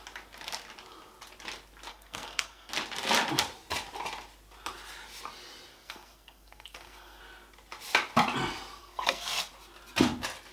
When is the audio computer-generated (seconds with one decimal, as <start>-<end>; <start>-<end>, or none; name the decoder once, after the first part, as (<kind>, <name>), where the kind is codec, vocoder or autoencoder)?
1.9-2.7 (codec, SNAC); 5.7-7.2; 8.8-9.5